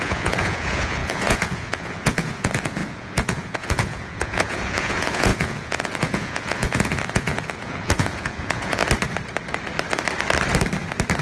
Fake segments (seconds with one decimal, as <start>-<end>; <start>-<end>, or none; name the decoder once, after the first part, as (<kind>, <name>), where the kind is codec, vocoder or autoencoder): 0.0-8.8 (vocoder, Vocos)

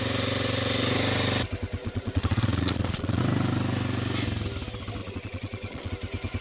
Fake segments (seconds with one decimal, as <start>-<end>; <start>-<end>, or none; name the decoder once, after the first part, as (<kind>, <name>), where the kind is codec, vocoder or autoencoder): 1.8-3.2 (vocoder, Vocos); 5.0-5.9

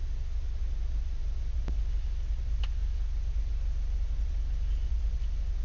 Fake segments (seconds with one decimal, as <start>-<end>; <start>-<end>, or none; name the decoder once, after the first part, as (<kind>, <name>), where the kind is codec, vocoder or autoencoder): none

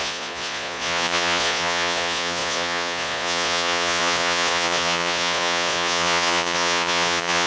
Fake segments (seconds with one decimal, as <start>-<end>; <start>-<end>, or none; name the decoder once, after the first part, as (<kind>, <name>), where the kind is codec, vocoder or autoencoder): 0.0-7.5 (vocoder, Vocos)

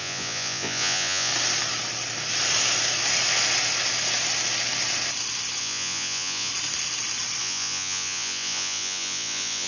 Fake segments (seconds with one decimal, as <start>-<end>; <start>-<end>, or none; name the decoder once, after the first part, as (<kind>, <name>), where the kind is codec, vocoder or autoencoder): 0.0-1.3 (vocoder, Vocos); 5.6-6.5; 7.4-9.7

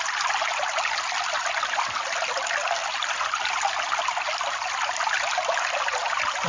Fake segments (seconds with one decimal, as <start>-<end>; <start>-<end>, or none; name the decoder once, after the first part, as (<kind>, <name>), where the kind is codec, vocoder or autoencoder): none